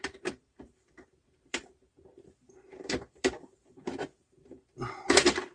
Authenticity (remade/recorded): remade